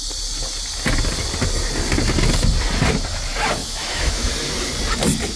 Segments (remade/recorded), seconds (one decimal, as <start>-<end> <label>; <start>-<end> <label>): 0.0-3.6 recorded; 3.6-4.3 remade; 4.3-5.4 recorded